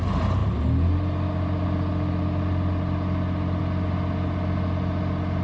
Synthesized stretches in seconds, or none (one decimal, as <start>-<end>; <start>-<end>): none

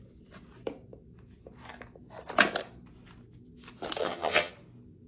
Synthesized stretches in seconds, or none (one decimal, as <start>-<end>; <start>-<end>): 4.0-4.5

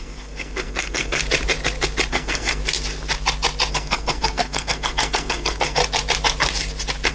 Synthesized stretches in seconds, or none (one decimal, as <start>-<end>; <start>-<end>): 0.0-1.2; 2.1-2.6; 3.7-5.8

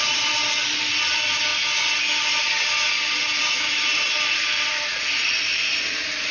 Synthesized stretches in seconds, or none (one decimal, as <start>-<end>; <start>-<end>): 0.0-1.5; 3.6-6.3

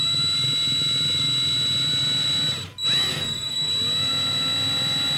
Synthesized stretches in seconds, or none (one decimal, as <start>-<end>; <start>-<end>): 3.1-3.7